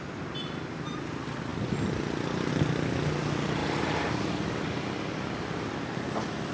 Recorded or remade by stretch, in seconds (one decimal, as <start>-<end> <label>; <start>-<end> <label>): 0.0-6.5 recorded